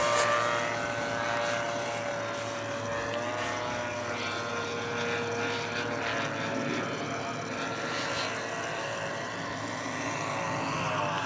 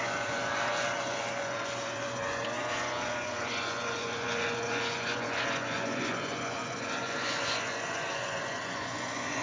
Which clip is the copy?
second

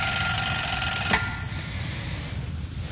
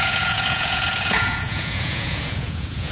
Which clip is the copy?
second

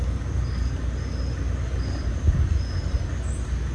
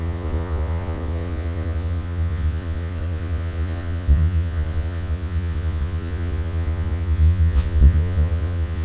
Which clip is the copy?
second